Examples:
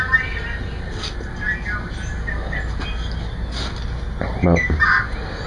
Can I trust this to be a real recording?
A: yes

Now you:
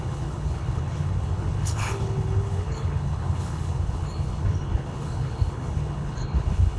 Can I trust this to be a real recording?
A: no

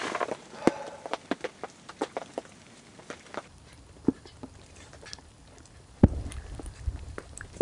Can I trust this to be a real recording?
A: yes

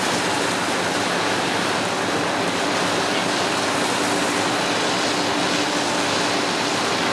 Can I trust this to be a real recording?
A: yes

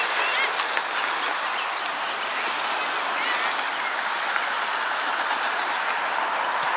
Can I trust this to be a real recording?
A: yes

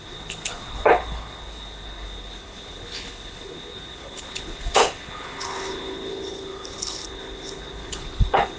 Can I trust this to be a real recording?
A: no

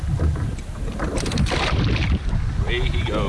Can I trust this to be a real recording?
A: yes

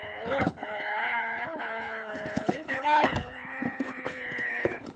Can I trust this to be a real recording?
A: no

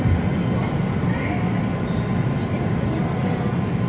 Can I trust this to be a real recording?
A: yes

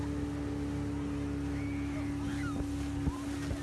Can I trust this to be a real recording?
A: yes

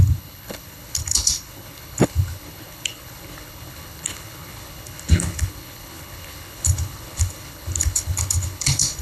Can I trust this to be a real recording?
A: no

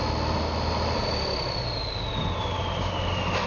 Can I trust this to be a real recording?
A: yes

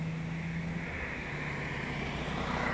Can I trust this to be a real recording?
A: yes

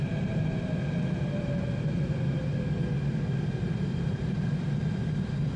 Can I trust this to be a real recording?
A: yes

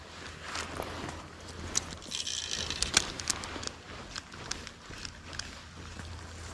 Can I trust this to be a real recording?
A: yes